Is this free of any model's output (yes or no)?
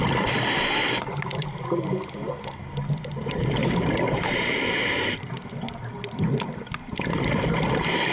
yes